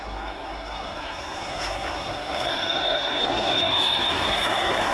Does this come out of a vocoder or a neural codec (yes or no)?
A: yes